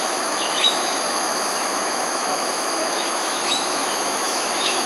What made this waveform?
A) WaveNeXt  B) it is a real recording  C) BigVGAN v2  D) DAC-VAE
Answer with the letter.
D